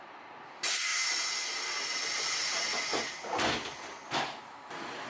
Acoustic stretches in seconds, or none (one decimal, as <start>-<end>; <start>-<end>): 0.0-5.1